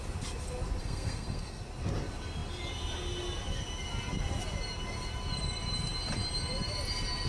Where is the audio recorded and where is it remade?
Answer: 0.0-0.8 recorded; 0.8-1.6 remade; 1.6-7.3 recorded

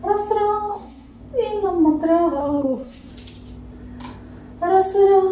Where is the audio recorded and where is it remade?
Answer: 0.0-0.7 recorded; 0.7-1.2 remade; 1.2-2.4 recorded; 2.4-3.1 remade; 3.1-5.3 recorded

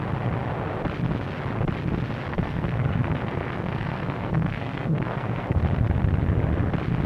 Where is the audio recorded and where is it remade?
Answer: 0.0-2.3 recorded; 2.3-5.6 remade; 5.6-7.1 recorded

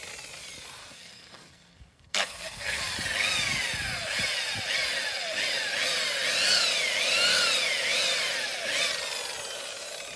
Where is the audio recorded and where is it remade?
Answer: 0.0-0.8 recorded; 0.8-2.8 remade; 2.8-10.2 recorded

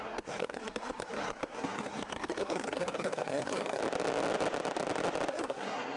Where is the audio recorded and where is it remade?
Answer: 0.0-3.8 remade; 3.8-5.3 recorded; 5.3-6.0 remade

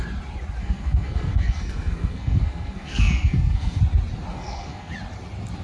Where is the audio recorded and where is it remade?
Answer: 0.0-0.6 recorded; 0.6-3.8 remade; 3.8-4.3 recorded; 4.3-4.9 remade; 4.9-5.6 recorded